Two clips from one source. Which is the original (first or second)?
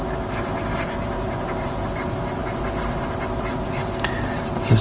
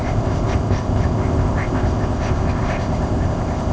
first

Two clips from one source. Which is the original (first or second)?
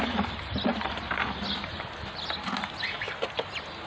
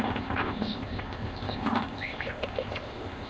first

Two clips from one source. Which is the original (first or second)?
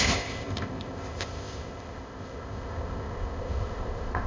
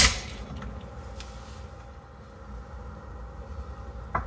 second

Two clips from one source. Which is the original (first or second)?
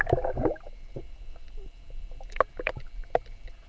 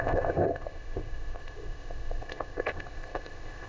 first